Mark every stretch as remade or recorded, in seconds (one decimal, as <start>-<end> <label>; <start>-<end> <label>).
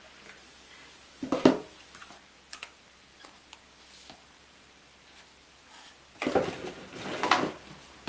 0.0-8.1 recorded